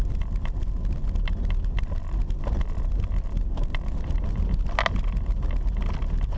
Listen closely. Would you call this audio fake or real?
real